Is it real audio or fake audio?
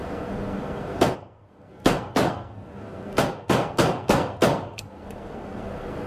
fake